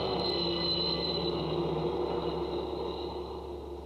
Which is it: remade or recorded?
recorded